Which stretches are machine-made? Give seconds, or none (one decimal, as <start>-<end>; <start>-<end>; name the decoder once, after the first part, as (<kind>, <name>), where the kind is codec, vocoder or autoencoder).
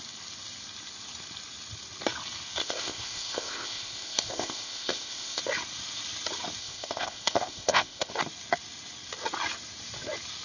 2.6-5.4 (codec, ZipCodec); 6.6-8.1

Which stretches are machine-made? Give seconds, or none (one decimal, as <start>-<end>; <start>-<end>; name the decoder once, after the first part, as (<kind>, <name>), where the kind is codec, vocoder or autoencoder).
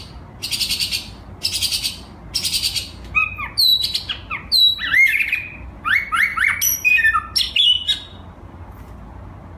none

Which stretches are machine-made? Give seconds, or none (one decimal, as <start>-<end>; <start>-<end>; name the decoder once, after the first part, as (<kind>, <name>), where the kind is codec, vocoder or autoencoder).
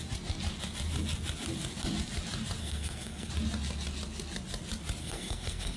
2.6-3.3 (codec, SNAC); 5.0-5.8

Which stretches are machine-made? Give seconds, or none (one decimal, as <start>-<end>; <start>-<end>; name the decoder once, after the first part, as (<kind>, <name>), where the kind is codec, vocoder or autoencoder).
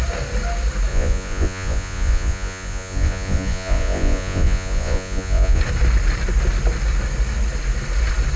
0.9-5.6 (vocoder, Vocos)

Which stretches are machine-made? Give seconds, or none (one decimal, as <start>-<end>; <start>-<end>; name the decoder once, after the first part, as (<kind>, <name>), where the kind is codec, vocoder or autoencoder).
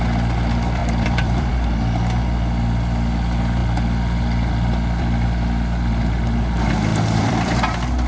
0.8-1.5 (vocoder, BigVGAN v2); 6.9-7.6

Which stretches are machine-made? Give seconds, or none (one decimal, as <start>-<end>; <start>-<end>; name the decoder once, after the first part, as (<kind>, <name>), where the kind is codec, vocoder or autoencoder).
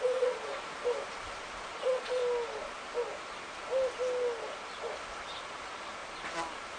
0.0-0.5 (vocoder, Vocos); 1.7-2.2; 5.4-6.0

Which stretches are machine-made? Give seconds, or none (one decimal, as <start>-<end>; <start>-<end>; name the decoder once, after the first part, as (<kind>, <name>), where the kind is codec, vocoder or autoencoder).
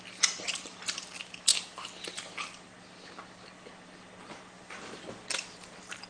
none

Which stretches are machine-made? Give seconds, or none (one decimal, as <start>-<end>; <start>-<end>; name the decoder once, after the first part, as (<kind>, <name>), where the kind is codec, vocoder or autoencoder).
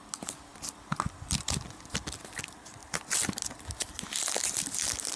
none